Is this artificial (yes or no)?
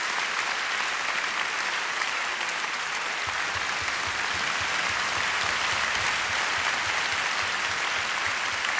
no